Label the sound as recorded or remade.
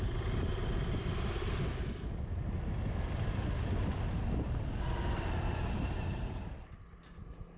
recorded